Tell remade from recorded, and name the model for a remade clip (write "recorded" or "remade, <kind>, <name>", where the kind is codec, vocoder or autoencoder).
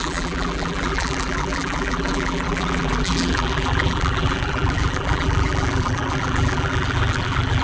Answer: remade, vocoder, BigVGAN v2